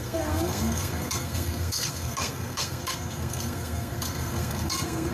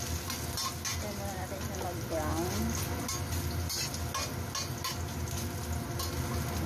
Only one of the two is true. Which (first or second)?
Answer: second